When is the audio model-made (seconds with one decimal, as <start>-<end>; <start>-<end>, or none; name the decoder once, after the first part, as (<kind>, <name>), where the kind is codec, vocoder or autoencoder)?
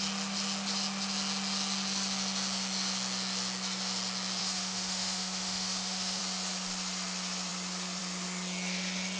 4.4-6.2 (autoencoder, DAC-VAE)